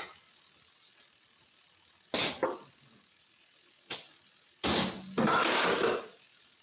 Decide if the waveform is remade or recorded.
recorded